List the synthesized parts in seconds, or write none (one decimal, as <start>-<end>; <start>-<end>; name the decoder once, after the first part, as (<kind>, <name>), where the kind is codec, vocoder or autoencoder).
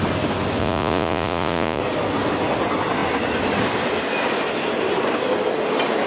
0.6-1.8 (vocoder, Vocos)